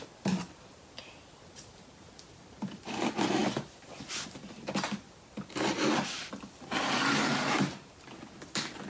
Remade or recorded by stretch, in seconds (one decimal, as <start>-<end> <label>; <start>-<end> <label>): 0.0-8.9 recorded